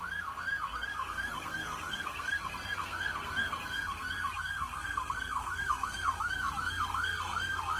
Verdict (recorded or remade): remade